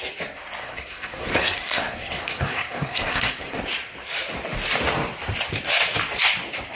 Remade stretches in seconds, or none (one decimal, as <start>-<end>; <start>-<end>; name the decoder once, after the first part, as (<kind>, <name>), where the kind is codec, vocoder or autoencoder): 0.6-3.6 (codec, SNAC)